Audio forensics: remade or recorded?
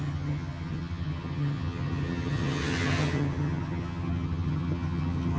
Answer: remade